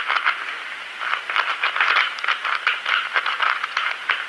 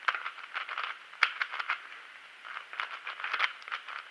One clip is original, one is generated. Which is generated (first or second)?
first